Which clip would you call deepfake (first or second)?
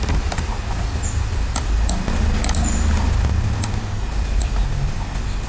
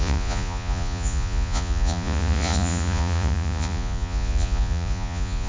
second